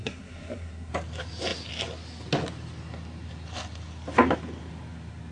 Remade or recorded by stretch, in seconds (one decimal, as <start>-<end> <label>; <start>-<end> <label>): 0.0-0.9 remade; 0.9-5.3 recorded